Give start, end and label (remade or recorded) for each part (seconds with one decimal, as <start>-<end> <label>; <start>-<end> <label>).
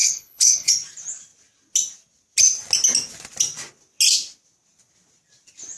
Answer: 0.0-0.7 remade; 0.7-5.8 recorded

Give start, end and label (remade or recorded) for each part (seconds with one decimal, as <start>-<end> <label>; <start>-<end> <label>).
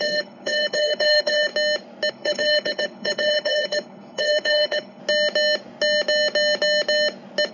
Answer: 0.0-1.5 remade; 1.5-2.1 recorded; 2.1-5.0 remade; 5.0-7.5 recorded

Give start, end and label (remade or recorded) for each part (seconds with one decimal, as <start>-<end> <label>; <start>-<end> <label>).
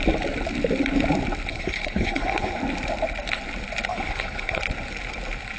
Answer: 0.0-1.5 recorded; 1.5-2.6 remade; 2.6-3.9 recorded; 3.9-4.6 remade; 4.6-5.6 recorded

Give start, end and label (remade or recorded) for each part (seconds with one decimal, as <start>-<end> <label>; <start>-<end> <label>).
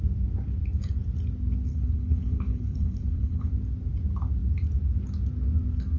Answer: 0.0-1.7 recorded; 1.7-3.5 remade; 3.5-6.0 recorded